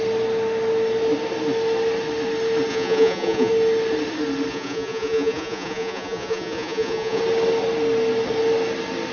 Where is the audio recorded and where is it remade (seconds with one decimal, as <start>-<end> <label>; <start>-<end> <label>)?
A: 0.0-2.7 recorded; 2.7-3.5 remade; 3.5-4.5 recorded; 4.5-7.2 remade; 7.2-9.1 recorded